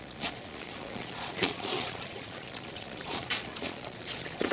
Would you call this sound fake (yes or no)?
yes